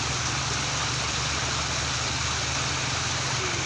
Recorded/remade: recorded